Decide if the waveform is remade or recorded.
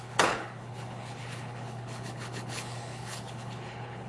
remade